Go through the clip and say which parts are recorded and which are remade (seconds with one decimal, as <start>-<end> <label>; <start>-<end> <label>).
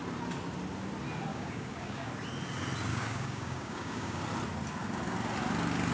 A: 0.0-1.3 recorded; 1.3-2.1 remade; 2.1-2.9 recorded; 2.9-4.2 remade; 4.2-5.9 recorded